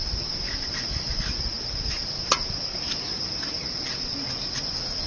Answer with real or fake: real